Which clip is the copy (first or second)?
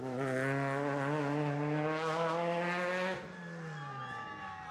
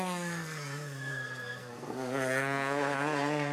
second